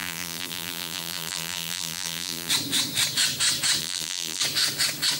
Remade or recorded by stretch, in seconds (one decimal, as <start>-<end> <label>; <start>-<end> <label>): 0.0-2.5 remade; 2.5-3.8 recorded; 3.8-4.4 remade; 4.4-5.2 recorded